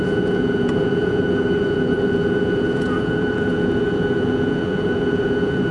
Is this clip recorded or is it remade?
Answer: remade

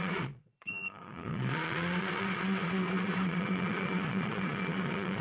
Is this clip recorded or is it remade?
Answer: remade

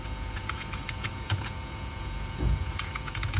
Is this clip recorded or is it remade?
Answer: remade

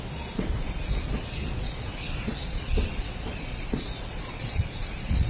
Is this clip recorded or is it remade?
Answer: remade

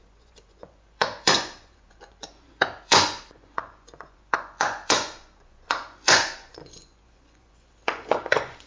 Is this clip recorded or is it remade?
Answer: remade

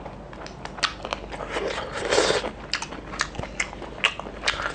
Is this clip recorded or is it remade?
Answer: recorded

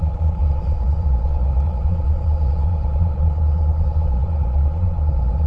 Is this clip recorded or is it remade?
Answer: remade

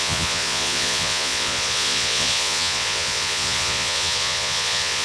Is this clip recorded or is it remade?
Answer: remade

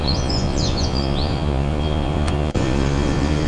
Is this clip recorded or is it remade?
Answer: remade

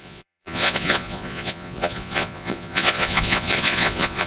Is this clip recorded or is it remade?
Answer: remade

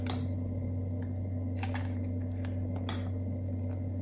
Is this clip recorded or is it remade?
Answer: recorded